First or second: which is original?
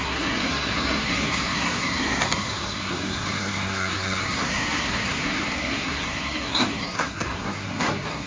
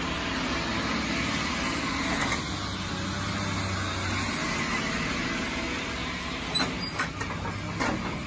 second